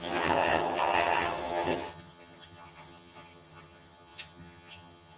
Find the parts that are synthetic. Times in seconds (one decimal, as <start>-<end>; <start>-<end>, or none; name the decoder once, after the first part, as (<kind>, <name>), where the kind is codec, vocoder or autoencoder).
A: 0.0-5.2 (vocoder, HiFi-GAN)